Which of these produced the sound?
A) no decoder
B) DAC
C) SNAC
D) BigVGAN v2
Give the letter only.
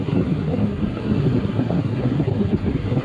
C